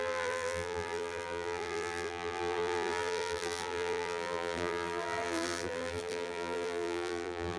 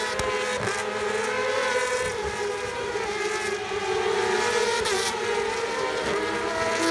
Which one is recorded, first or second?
second